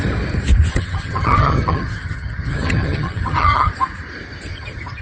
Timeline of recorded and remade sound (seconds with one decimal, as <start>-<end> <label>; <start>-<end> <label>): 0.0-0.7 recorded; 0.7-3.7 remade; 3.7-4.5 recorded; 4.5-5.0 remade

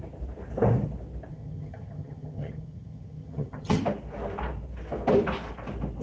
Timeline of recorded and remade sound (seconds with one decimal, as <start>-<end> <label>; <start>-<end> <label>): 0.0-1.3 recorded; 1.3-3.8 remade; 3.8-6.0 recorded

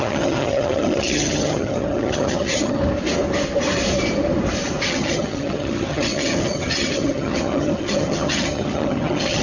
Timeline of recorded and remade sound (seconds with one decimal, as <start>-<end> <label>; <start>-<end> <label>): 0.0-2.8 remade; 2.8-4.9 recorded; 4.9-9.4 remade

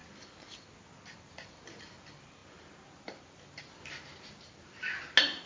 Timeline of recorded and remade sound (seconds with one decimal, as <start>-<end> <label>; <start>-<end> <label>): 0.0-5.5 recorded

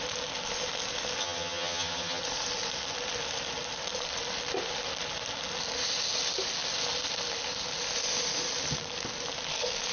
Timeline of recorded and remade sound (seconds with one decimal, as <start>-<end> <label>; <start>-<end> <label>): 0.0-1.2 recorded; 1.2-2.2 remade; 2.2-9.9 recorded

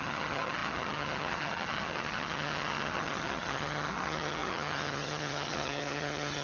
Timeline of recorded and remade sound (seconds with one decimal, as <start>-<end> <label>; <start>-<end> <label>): 0.0-6.4 remade

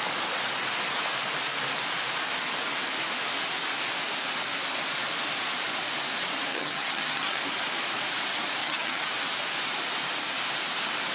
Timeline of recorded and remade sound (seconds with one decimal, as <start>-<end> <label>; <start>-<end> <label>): 0.0-6.5 recorded; 6.5-7.4 remade; 7.4-8.6 recorded; 8.6-9.1 remade; 9.1-11.1 recorded

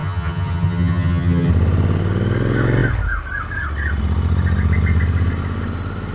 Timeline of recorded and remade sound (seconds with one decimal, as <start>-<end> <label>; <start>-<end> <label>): 0.0-1.5 remade; 1.5-6.1 recorded